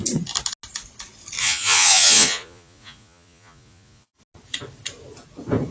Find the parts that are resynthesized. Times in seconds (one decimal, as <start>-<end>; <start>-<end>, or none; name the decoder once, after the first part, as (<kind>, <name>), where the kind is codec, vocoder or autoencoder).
1.4-4.2 (vocoder, Vocos)

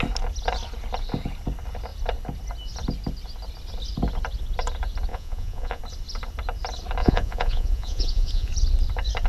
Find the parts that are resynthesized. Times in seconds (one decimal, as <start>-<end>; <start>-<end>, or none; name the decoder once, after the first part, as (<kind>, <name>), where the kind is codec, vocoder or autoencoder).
5.1-5.8 (vocoder, Vocos); 7.0-8.5

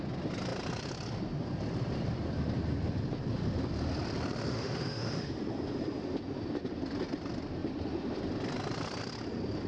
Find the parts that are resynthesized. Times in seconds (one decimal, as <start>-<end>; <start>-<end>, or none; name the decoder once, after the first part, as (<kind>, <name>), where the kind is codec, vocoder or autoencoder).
4.5-5.4 (autoencoder, DAC-VAE)

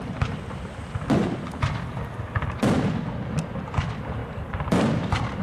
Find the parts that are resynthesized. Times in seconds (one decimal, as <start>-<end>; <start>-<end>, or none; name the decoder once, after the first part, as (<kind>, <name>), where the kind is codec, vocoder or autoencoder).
0.0-1.2 (vocoder, BigVGAN v2); 3.6-5.4

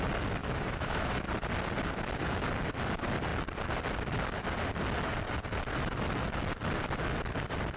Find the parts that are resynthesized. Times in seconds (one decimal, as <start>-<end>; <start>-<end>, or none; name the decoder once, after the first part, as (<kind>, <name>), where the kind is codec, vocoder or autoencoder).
0.4-1.3 (autoencoder, DAC-VAE)

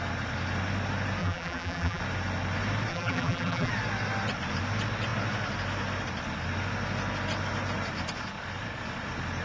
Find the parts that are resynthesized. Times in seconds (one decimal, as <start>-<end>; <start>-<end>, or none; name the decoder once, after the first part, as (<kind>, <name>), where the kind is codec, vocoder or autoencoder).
1.2-2.0 (vocoder, BigVGAN v2); 2.9-3.7

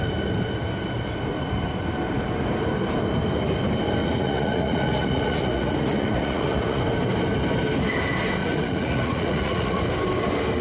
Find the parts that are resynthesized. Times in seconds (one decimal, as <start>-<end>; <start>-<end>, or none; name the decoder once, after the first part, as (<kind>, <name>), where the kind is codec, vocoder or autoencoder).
4.0-6.8 (vocoder, Vocos); 8.4-9.8